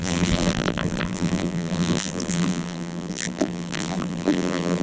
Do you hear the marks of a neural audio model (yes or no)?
yes